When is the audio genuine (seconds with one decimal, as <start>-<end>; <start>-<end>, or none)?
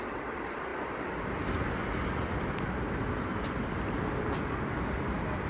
0.0-5.5